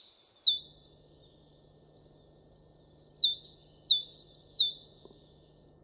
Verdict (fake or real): real